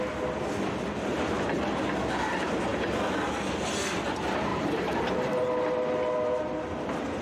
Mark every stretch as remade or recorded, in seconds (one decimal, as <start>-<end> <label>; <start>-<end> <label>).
0.0-4.5 recorded; 4.5-5.3 remade; 5.3-7.2 recorded